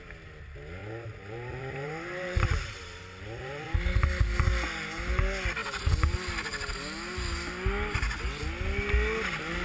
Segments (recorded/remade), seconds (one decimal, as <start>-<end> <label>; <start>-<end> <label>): 0.0-0.8 recorded; 0.8-3.6 remade; 3.6-9.6 recorded